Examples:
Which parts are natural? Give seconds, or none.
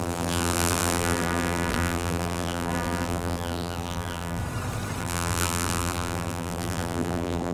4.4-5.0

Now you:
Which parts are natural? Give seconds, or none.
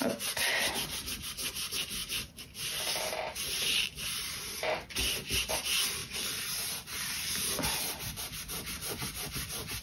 0.0-2.0; 4.5-6.0; 7.8-9.8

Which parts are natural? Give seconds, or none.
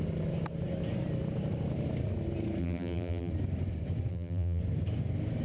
0.0-2.6; 3.3-4.1; 4.6-5.4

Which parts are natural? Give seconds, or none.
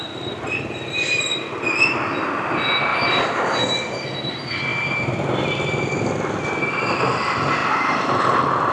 0.0-2.9; 3.6-4.7; 5.5-7.6; 8.2-8.7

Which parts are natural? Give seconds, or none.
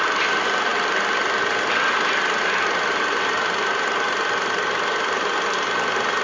0.0-6.2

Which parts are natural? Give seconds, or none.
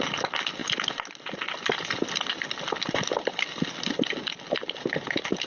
0.0-5.5